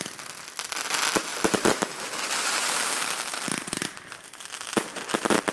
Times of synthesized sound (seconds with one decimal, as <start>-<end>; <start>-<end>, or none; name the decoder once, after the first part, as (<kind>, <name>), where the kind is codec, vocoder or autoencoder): 1.3-4.6 (vocoder, BigVGAN v2)